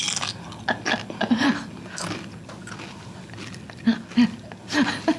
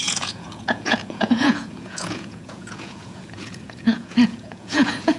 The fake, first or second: second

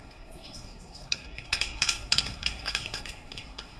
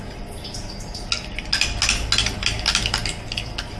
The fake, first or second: first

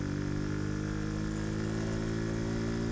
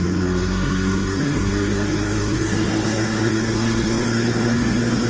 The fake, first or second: second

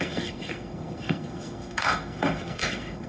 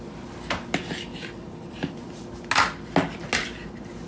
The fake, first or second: first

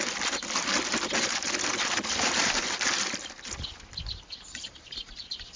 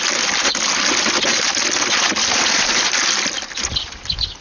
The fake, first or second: first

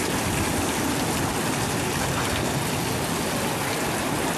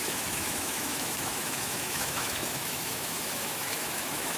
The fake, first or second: second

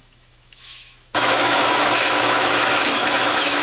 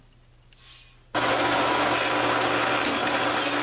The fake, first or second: first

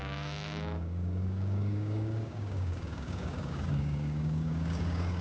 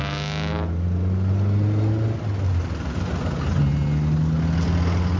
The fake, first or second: first